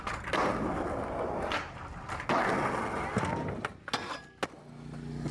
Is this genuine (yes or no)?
yes